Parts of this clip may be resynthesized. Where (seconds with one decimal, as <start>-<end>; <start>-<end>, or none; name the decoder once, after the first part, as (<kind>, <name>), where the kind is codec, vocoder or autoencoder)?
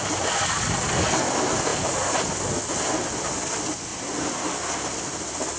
3.9-4.5 (vocoder, BigVGAN v2)